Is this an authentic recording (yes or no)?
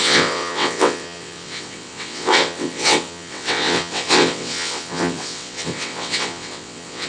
no